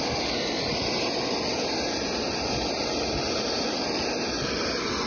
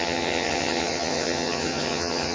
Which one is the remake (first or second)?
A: second